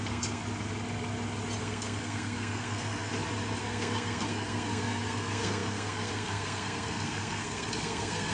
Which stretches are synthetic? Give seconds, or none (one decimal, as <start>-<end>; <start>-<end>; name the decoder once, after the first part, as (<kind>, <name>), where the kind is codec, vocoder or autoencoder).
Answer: 0.0-0.4 (codec, SNAC); 1.6-3.1; 3.6-8.3